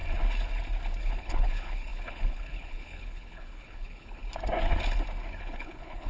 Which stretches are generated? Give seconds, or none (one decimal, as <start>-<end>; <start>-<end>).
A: 1.0-4.2; 5.4-6.1